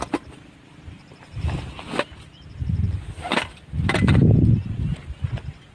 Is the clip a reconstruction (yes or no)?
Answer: no